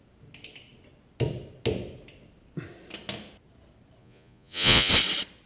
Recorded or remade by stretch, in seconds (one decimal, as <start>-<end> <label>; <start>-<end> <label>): 0.0-4.0 recorded; 4.0-4.9 remade; 4.9-5.5 recorded